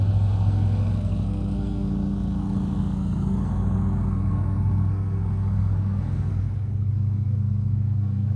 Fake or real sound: fake